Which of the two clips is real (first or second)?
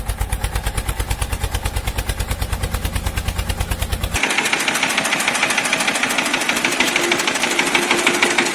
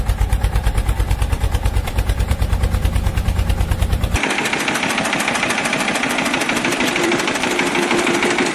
first